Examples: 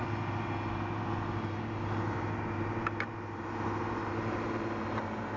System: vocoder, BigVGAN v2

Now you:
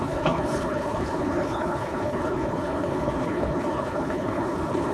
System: codec, HILCodec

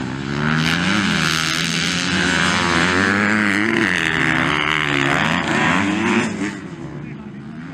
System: none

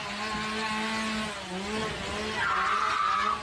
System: none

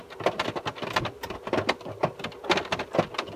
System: none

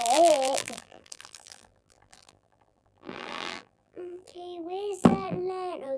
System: vocoder, BigVGAN v2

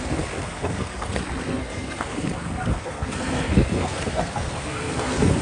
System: codec, SNAC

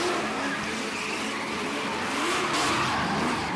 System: none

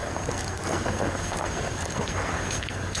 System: codec, SNAC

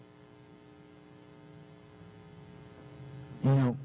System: none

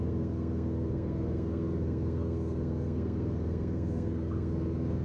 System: codec, SNAC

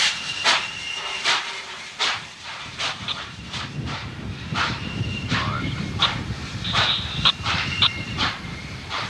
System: vocoder, BigVGAN v2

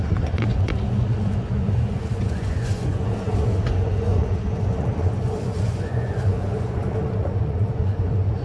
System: vocoder, Vocos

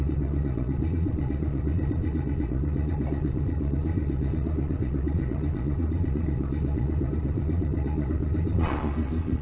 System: vocoder, Vocos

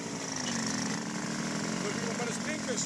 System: none